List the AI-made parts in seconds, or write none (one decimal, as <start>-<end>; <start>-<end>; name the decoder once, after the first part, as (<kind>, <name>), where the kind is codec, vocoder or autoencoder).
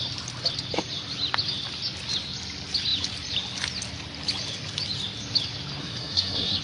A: 5.8-6.6 (codec, SNAC)